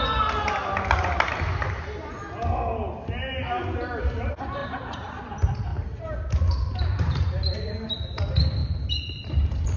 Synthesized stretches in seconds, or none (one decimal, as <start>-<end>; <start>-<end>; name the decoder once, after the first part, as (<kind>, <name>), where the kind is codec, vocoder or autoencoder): 4.6-5.2 (vocoder, BigVGAN v2); 5.7-8.2; 8.6-9.8